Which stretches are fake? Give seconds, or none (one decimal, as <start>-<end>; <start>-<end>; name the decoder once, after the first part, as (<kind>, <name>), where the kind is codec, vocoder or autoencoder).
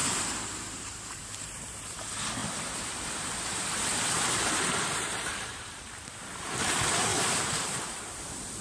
0.0-8.6 (vocoder, BigVGAN v2)